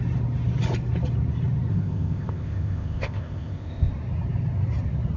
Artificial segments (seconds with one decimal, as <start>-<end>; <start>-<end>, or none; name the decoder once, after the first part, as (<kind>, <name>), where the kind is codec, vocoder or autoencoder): 1.7-3.9 (codec, ZipCodec)